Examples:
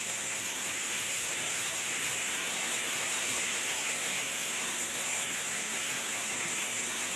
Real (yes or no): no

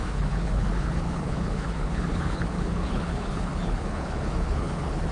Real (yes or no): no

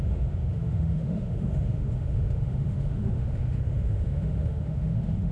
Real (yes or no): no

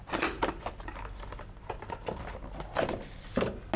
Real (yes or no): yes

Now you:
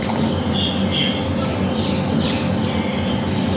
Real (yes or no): yes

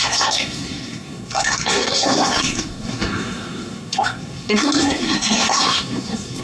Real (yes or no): no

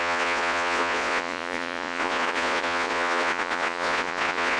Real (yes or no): no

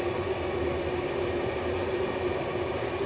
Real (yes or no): yes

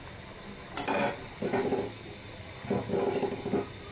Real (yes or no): yes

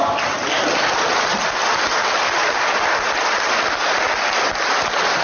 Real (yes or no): yes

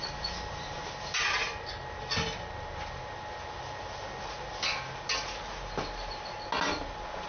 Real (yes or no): yes